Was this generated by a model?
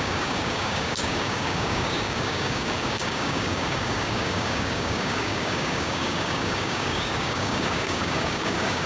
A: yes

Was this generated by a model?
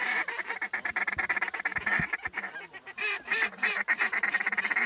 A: yes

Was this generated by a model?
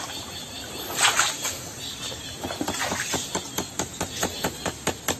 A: no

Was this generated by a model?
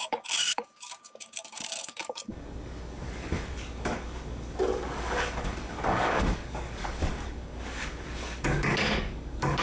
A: yes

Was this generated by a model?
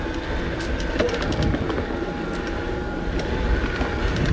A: no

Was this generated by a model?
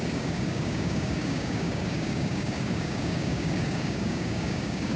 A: yes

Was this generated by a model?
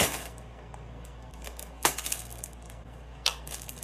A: yes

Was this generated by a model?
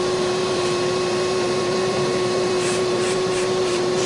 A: yes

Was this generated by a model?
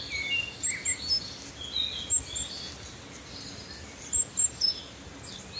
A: no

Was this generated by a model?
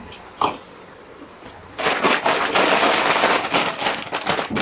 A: no